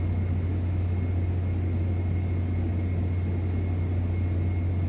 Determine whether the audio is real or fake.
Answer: real